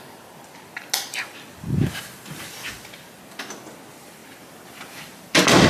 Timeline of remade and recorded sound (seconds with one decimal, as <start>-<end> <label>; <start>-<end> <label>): 0.0-5.7 recorded